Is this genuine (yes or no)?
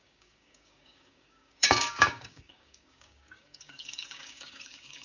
no